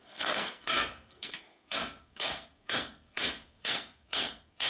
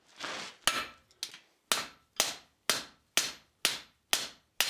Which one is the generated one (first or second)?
first